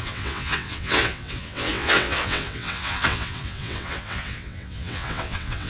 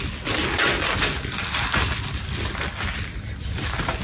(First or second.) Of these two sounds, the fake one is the first